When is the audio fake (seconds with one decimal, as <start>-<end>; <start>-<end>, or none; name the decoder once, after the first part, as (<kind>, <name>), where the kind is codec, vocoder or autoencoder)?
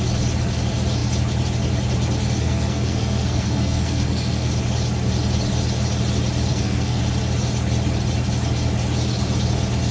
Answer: 2.4-4.5 (codec, SNAC); 6.5-7.0